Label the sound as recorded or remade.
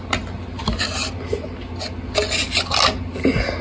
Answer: recorded